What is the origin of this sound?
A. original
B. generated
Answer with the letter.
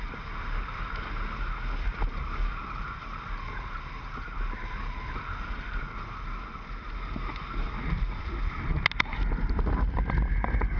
A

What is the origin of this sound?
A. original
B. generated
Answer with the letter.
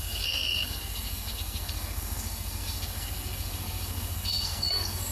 B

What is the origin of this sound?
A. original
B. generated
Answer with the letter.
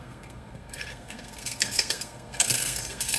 B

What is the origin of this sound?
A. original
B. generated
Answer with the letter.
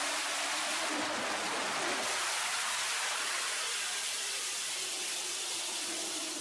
A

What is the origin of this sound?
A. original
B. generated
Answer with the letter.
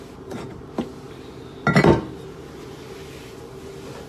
A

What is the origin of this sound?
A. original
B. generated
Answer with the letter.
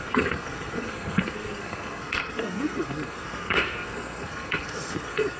B